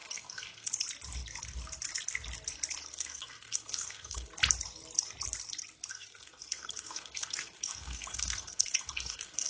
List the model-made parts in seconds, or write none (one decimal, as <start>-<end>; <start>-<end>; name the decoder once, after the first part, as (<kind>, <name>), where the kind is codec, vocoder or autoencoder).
0.0-0.7 (codec, SNAC); 2.8-4.3; 5.9-9.5